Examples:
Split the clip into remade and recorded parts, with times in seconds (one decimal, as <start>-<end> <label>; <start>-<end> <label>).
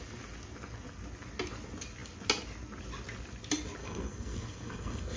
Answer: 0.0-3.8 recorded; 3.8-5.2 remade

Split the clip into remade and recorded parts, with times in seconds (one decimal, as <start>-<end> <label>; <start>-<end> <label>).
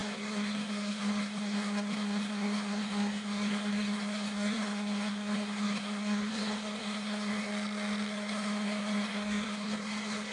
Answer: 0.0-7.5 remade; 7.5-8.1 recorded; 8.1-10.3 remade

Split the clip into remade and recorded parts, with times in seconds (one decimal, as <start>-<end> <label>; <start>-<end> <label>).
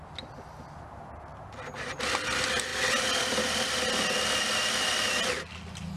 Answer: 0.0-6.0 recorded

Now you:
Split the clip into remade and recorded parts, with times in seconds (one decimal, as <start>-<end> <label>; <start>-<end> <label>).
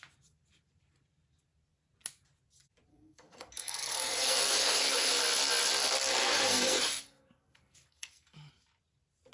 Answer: 0.0-2.9 recorded; 2.9-5.2 remade; 5.2-6.2 recorded; 6.2-8.5 remade; 8.5-9.3 recorded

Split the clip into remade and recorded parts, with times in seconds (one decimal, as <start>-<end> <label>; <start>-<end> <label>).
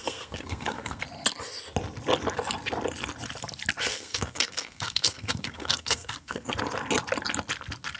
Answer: 0.0-1.0 remade; 1.0-3.9 recorded; 3.9-6.5 remade; 6.5-8.0 recorded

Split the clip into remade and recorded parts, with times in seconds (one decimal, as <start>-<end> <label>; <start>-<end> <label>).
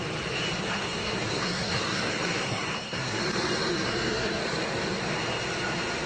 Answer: 0.0-0.6 recorded; 0.6-3.2 remade; 3.2-3.7 recorded; 3.7-4.4 remade; 4.4-6.1 recorded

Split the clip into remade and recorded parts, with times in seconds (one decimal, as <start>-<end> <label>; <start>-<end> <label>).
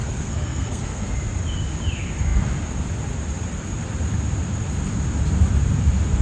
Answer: 0.0-1.1 remade; 1.1-6.2 recorded